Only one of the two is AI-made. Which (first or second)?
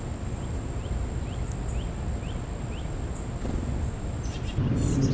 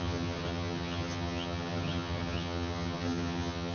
second